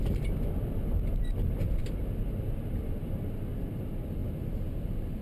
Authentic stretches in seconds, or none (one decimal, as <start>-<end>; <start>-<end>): 0.0-5.2